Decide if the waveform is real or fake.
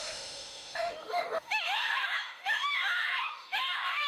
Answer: fake